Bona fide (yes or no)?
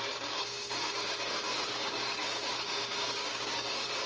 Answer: no